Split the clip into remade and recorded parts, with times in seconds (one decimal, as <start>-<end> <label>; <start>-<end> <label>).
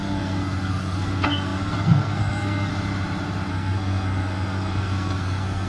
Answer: 0.0-2.7 remade; 2.7-3.5 recorded; 3.5-5.7 remade